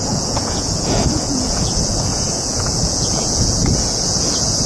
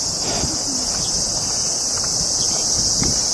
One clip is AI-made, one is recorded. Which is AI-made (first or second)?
first